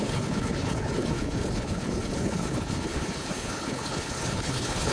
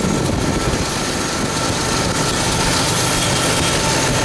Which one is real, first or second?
second